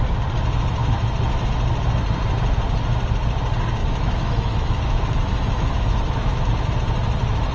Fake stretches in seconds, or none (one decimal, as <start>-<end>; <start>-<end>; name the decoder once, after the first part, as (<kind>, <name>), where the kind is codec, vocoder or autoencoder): 3.8-6.5 (autoencoder, DAC-VAE)